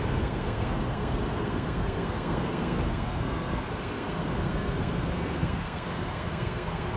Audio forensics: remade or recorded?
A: remade